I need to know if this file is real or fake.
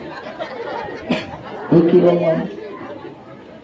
real